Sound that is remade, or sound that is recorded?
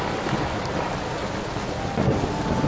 recorded